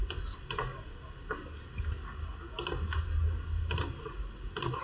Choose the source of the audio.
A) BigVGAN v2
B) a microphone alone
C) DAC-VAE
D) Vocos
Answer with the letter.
B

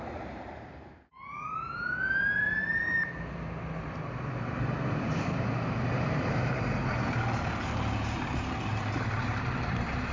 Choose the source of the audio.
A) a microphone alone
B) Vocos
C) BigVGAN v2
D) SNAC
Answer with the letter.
C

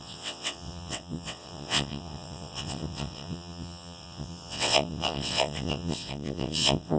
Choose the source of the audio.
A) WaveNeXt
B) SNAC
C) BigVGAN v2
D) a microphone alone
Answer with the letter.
A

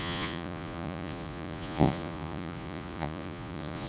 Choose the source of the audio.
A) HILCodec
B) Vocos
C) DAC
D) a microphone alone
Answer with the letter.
B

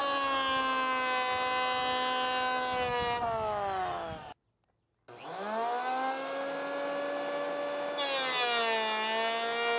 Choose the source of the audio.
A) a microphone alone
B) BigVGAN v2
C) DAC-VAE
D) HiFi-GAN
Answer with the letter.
A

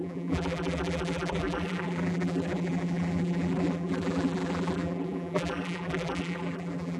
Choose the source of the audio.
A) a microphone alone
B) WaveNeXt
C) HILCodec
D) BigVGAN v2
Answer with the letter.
D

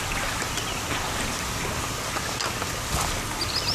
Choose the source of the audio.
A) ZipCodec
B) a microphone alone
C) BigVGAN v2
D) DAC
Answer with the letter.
B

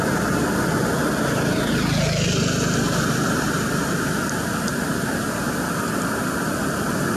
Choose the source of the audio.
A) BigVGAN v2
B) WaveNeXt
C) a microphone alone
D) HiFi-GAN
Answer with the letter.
C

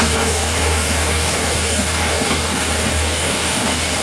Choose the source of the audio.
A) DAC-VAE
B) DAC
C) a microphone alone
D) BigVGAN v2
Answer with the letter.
B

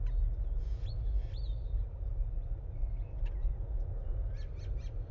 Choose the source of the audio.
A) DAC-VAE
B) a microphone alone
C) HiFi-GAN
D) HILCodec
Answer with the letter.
B